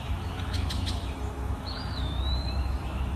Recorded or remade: remade